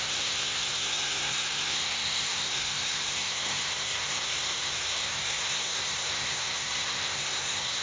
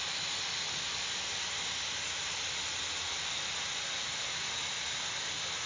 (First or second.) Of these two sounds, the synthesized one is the first